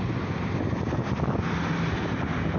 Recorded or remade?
recorded